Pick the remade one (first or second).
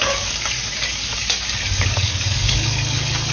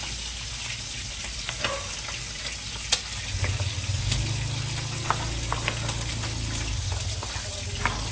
first